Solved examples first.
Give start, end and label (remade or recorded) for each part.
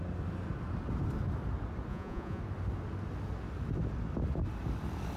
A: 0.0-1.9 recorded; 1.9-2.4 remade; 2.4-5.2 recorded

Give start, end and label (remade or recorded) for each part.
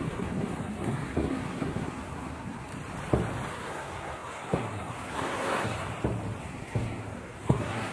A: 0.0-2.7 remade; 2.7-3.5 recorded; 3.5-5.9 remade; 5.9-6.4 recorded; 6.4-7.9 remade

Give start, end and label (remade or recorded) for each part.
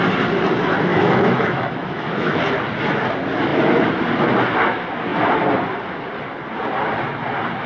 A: 0.0-0.9 recorded; 0.9-2.4 remade; 2.4-7.7 recorded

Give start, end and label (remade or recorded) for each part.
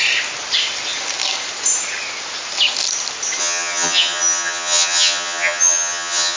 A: 0.0-3.4 recorded; 3.4-6.4 remade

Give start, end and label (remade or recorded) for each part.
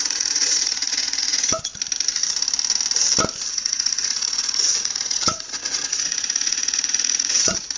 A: 0.0-1.7 remade; 1.7-3.5 recorded; 3.5-7.8 remade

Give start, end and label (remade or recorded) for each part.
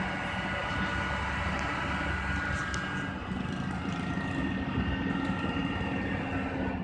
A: 0.0-6.8 recorded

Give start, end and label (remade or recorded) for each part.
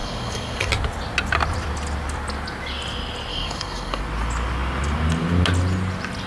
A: 0.0-0.7 remade; 0.7-3.3 recorded; 3.3-4.0 remade; 4.0-6.3 recorded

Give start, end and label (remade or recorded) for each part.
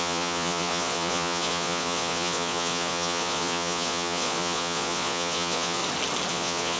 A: 0.0-5.8 remade; 5.8-6.3 recorded; 6.3-6.8 remade